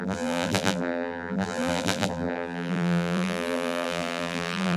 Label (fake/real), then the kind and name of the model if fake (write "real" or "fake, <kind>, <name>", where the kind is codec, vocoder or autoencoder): fake, vocoder, BigVGAN v2